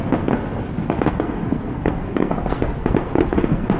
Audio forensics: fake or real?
fake